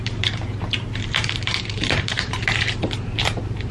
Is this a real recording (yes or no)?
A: no